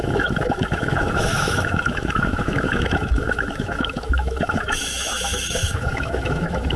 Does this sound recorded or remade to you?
remade